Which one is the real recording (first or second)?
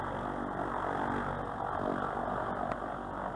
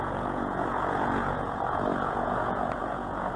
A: first